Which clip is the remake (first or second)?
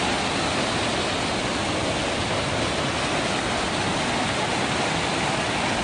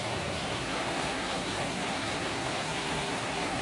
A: second